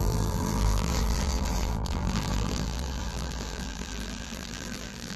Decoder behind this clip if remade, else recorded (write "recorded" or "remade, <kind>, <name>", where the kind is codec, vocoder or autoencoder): remade, vocoder, BigVGAN v2